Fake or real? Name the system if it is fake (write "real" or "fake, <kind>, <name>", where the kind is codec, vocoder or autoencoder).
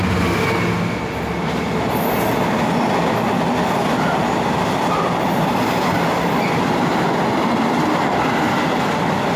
real